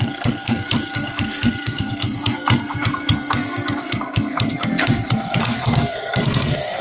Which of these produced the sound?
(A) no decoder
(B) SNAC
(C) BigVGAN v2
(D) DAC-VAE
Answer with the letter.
B